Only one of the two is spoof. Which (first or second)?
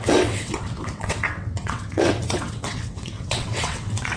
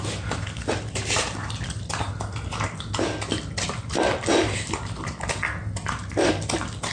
first